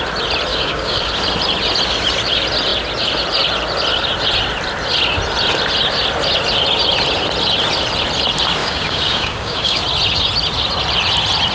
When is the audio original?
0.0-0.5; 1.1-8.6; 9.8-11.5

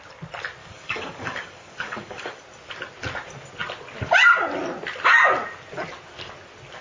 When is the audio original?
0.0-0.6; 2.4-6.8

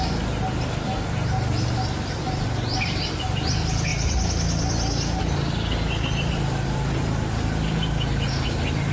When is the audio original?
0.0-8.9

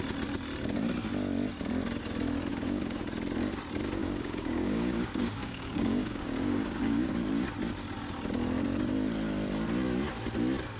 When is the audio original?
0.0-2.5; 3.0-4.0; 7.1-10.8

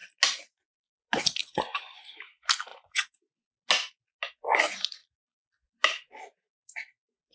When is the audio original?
0.0-1.4; 2.2-2.7; 3.5-7.3

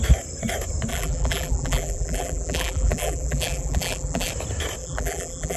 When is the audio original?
0.0-0.9; 4.3-4.8